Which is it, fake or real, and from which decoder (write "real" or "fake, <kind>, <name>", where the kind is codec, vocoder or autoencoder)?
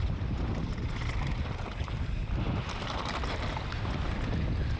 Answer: real